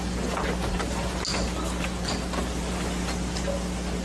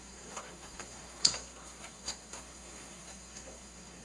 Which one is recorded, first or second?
first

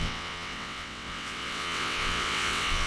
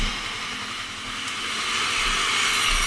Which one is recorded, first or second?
second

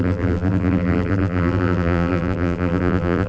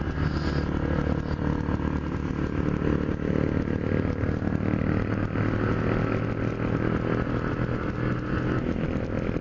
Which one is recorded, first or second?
second